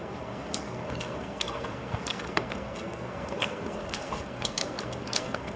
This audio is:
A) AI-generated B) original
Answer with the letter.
A